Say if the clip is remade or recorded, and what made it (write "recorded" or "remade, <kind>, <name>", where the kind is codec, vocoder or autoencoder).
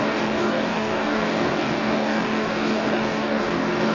remade, codec, DAC